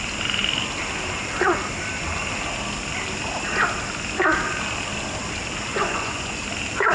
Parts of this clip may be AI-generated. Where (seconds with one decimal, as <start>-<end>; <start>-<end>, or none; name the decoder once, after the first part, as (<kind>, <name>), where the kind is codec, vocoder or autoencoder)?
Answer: 5.7-6.4 (vocoder, Vocos)